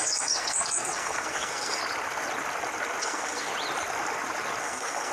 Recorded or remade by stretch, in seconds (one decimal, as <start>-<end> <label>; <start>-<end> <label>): 0.0-1.8 remade; 1.8-3.0 recorded; 3.0-3.5 remade; 3.5-4.6 recorded; 4.6-5.1 remade